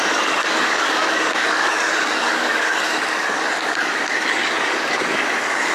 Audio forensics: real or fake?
fake